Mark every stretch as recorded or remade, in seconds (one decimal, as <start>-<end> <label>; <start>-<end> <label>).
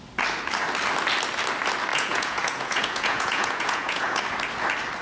0.0-1.9 recorded; 1.9-4.2 remade; 4.2-5.0 recorded